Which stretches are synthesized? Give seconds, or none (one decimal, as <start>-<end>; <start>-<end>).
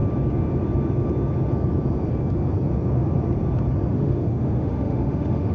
3.9-5.5